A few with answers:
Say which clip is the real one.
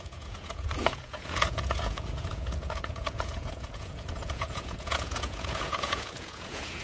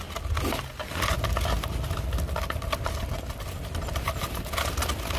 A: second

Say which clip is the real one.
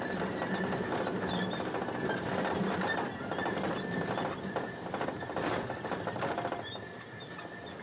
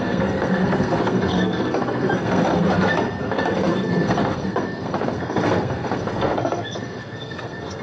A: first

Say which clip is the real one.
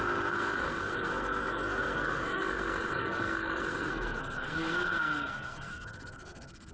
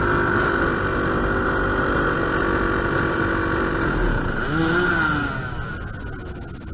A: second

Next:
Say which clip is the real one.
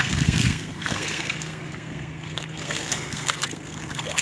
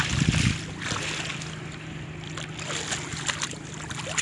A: second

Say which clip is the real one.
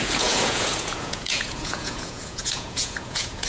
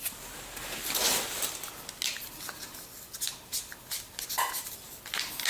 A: second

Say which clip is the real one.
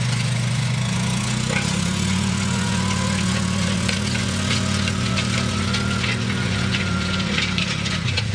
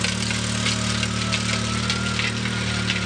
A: second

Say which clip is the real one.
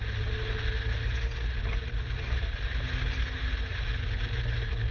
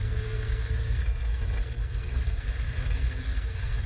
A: first